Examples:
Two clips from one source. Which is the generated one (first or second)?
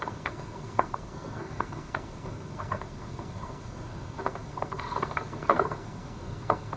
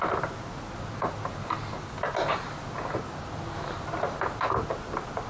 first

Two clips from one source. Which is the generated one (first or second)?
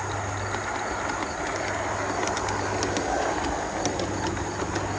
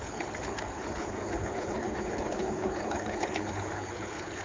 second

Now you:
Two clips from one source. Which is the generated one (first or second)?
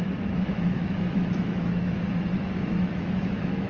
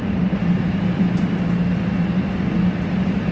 first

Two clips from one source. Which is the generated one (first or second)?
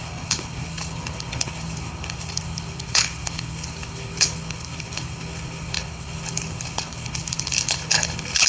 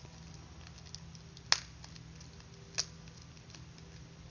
first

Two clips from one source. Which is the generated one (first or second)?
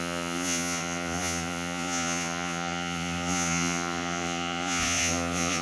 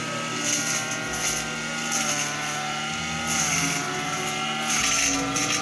first